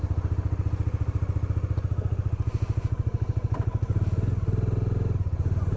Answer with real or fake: real